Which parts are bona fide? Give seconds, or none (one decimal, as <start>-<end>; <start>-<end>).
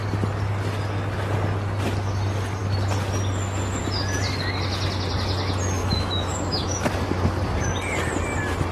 0.0-5.8; 6.9-8.7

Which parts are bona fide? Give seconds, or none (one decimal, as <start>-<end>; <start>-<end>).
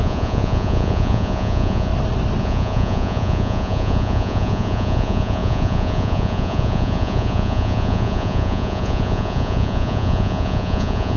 1.9-2.4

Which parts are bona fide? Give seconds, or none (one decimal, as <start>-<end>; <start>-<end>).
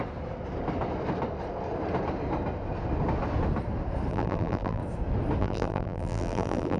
0.0-4.1; 4.8-5.4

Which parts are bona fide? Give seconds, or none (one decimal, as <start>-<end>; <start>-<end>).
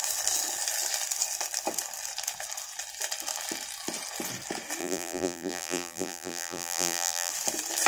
0.0-4.8; 7.3-7.9